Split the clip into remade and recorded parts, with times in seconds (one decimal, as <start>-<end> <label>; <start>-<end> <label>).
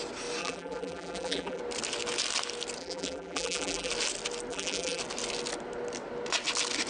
0.0-0.4 recorded; 0.4-1.6 remade; 1.6-2.8 recorded; 2.8-3.9 remade; 3.9-4.5 recorded; 4.5-5.0 remade; 5.0-6.9 recorded